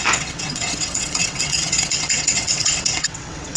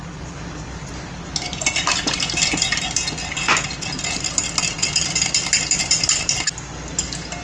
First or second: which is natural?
second